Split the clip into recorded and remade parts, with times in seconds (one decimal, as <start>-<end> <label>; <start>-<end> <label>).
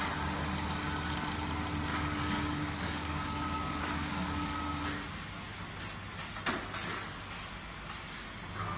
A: 0.0-1.9 recorded; 1.9-4.6 remade; 4.6-8.8 recorded